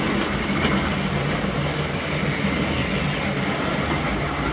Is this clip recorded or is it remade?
recorded